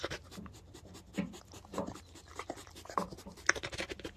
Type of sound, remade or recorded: recorded